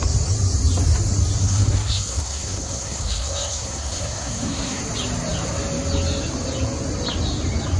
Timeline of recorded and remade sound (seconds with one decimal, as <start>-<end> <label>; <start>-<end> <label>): 0.0-1.4 recorded; 1.4-4.8 remade; 4.8-7.8 recorded